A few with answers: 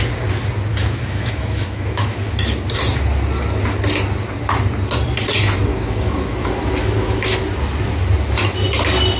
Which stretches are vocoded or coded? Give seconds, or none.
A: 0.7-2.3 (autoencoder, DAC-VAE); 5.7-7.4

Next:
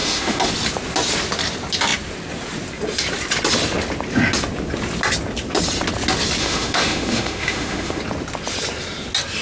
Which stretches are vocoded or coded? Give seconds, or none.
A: 0.0-0.5 (autoencoder, DAC-VAE); 6.4-8.0

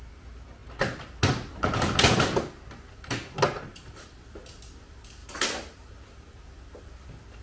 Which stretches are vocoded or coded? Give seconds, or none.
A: none